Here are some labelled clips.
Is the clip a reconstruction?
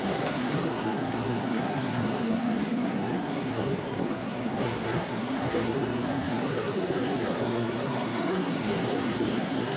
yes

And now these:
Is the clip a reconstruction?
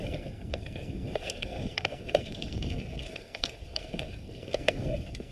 yes